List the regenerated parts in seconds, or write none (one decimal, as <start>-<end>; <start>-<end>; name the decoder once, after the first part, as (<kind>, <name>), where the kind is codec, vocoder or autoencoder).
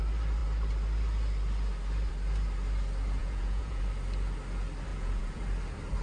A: 3.2-3.8 (vocoder, Vocos); 4.9-5.4